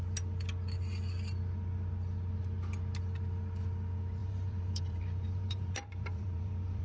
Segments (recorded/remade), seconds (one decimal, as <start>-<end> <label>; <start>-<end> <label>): 0.0-4.2 recorded; 4.2-6.8 remade

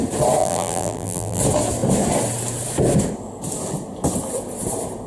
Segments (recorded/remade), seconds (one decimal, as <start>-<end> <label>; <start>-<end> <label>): 0.0-0.4 recorded; 0.4-1.4 remade; 1.4-5.1 recorded

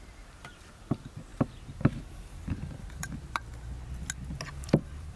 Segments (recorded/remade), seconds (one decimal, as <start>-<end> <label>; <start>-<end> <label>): 0.0-3.5 remade; 3.5-4.5 recorded; 4.5-5.2 remade

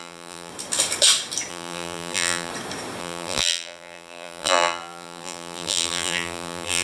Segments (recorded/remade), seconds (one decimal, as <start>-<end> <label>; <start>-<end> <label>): 0.0-0.5 remade; 0.5-1.5 recorded; 1.5-2.5 remade; 2.5-3.0 recorded; 3.0-6.8 remade

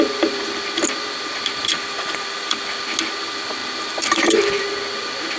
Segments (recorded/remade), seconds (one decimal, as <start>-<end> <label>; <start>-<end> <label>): 0.0-1.6 recorded; 1.6-2.8 remade; 2.8-3.6 recorded; 3.6-4.6 remade; 4.6-5.4 recorded

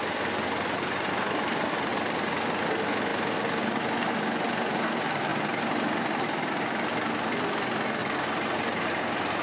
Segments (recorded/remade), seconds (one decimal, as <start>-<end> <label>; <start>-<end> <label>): 0.0-8.0 recorded; 8.0-9.4 remade

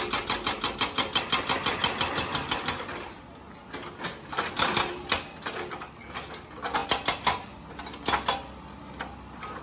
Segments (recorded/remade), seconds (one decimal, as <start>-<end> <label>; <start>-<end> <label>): 0.0-9.6 recorded